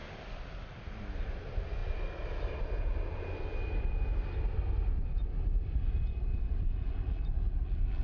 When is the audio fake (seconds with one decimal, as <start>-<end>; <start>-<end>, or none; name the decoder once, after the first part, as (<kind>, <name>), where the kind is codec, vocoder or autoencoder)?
none